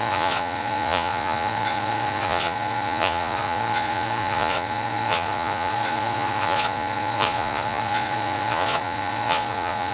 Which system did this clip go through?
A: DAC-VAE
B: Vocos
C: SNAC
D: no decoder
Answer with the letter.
B